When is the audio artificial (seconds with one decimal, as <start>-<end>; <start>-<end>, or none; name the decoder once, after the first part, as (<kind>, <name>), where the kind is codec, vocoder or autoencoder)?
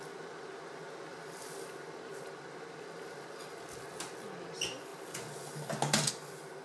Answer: none